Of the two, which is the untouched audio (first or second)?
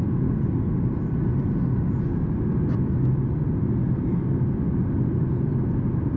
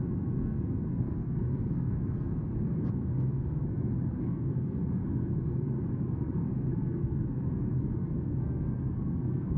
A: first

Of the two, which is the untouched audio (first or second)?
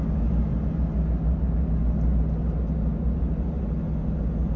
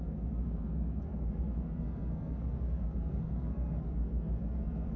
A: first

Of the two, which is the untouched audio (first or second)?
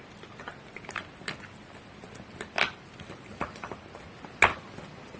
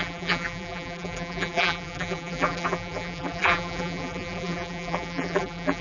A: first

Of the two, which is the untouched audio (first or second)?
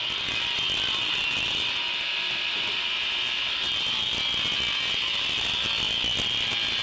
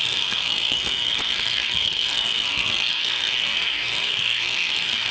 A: first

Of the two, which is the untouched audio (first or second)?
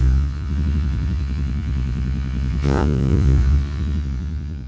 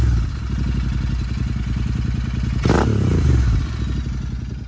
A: second